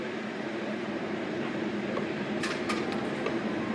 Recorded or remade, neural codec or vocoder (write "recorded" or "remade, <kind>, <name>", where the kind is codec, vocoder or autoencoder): remade, vocoder, BigVGAN v2